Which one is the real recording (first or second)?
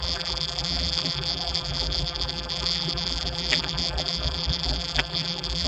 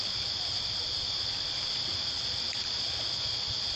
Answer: second